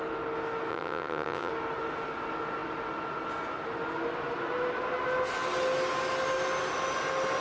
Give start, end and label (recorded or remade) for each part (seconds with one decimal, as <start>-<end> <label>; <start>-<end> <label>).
0.0-0.7 recorded; 0.7-1.5 remade; 1.5-7.4 recorded